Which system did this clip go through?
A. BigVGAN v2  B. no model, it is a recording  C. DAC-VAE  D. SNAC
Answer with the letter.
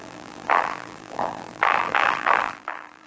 A